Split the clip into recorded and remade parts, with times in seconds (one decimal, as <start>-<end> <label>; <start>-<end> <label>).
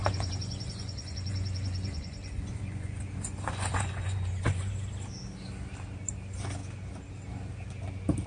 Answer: 0.0-4.7 remade; 4.7-8.3 recorded